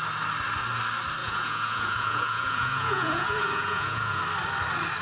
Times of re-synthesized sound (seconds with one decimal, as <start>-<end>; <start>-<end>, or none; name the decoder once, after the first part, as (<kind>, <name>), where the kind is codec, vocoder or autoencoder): 1.2-4.2 (vocoder, Vocos)